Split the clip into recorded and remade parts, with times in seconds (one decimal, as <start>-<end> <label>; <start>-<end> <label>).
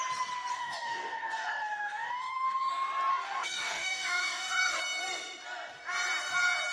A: 0.0-0.5 recorded; 0.5-2.7 remade; 2.7-3.1 recorded; 3.1-4.8 remade; 4.8-6.7 recorded